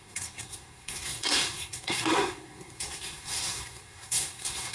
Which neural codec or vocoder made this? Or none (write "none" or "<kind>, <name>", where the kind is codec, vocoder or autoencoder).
codec, SNAC